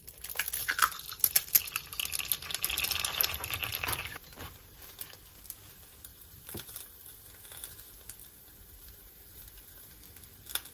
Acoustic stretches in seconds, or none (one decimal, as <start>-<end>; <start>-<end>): 0.0-6.1; 7.1-8.2; 9.9-10.7